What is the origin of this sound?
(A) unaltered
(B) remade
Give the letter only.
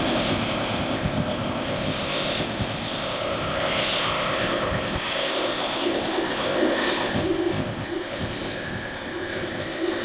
B